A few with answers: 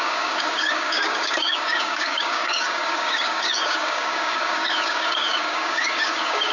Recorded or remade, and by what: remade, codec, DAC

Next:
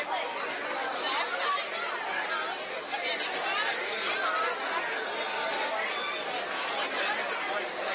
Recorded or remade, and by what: recorded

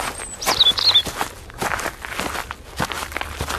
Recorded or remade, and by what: recorded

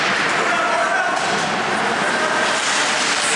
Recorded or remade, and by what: recorded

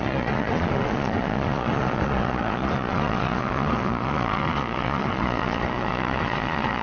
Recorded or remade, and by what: remade, vocoder, Vocos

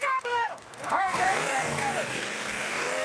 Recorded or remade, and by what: remade, codec, DAC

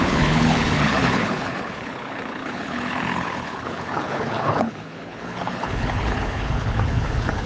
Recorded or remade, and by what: remade, codec, HILCodec